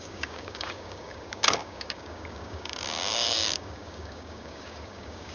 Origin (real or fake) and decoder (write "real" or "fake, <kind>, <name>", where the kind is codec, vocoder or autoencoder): fake, codec, DAC